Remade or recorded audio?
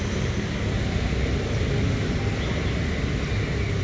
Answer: recorded